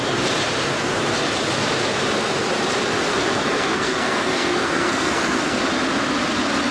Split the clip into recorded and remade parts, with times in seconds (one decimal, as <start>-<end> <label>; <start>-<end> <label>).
0.0-3.1 recorded; 3.1-5.6 remade; 5.6-6.7 recorded